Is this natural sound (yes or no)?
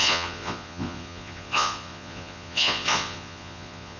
no